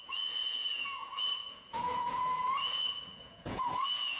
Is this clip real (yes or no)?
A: no